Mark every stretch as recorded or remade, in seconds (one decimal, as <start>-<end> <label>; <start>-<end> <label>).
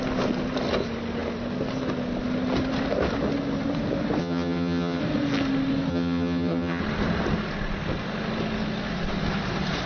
0.0-4.2 recorded; 4.2-5.0 remade; 5.0-5.9 recorded; 5.9-6.8 remade; 6.8-9.9 recorded